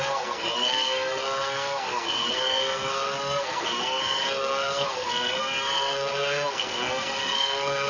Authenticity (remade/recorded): remade